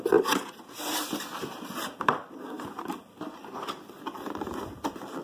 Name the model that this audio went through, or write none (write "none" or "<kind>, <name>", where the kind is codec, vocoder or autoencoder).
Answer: none